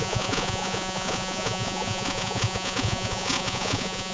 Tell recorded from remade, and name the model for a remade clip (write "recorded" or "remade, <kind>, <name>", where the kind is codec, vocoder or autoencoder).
remade, vocoder, Vocos